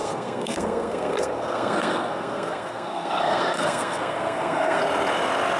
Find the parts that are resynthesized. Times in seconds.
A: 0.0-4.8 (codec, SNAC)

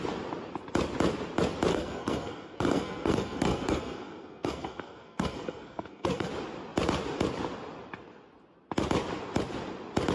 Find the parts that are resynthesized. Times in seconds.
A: 1.7-6.3 (codec, SNAC)